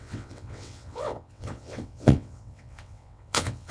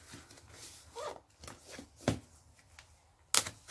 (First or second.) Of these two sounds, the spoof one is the first